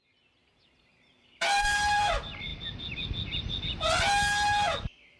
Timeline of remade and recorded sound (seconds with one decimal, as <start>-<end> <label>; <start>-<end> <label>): 0.0-0.4 recorded; 0.4-2.0 remade; 2.0-5.2 recorded